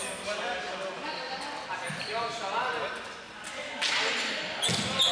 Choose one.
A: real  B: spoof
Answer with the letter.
A